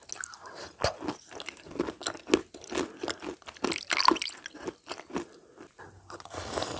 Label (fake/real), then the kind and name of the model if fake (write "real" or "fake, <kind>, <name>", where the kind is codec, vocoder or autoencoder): real